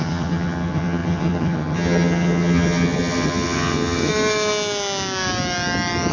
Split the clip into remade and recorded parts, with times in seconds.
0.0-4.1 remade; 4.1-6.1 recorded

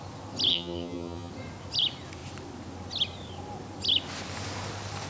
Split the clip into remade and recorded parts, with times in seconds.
0.0-0.5 recorded; 0.5-1.3 remade; 1.3-5.1 recorded

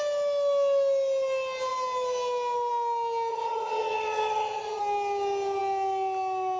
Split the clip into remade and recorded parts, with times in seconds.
0.0-3.3 recorded; 3.3-4.8 remade; 4.8-6.6 recorded

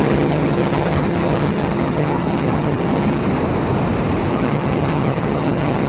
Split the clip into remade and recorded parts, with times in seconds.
0.0-3.2 remade; 3.2-4.3 recorded; 4.3-5.9 remade

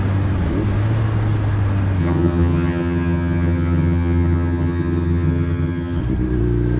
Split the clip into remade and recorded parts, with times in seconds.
0.0-2.0 recorded; 2.0-6.0 remade; 6.0-6.8 recorded

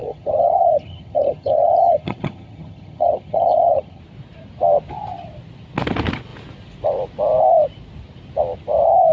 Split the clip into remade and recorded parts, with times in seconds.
0.0-4.0 remade; 4.0-9.1 recorded

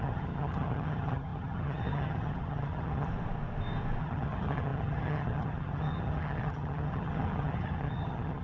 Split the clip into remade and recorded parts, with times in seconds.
0.0-3.1 remade; 3.1-4.0 recorded; 4.0-8.4 remade